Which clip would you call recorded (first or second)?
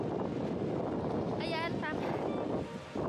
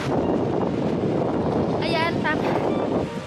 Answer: first